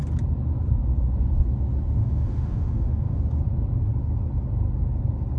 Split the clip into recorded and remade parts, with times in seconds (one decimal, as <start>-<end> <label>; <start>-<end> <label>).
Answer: 0.0-2.0 recorded; 2.0-3.2 remade; 3.2-5.4 recorded